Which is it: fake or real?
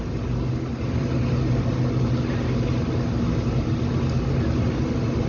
real